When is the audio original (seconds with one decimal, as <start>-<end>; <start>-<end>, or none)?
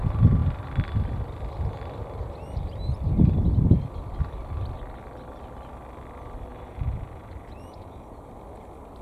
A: 0.0-6.5; 8.3-9.0